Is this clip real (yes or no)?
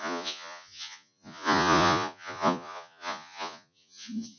no